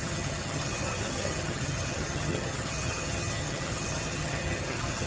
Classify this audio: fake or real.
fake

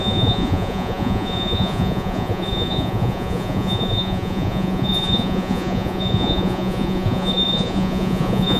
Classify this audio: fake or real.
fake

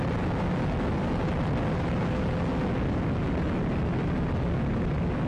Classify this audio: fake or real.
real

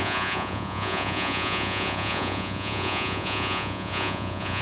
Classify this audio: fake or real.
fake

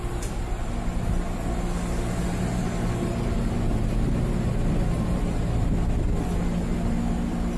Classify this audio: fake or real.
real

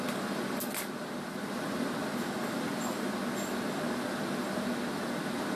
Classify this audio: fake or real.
real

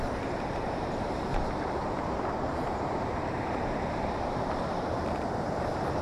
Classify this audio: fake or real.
fake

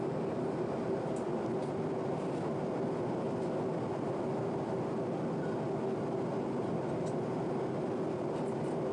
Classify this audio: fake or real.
real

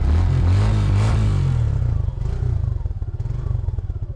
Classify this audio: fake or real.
real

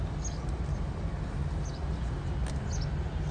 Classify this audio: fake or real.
real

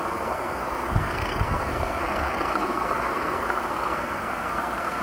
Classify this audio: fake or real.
fake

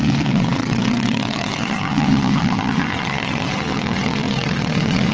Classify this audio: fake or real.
fake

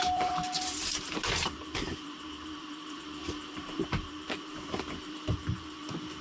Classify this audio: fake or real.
fake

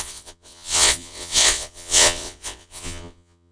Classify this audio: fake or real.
fake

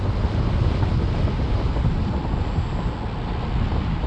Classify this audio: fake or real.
real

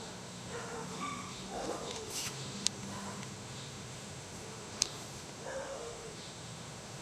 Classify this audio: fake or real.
fake